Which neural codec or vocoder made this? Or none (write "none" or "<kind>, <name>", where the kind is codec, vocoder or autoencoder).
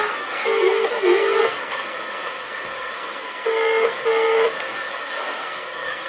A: codec, SNAC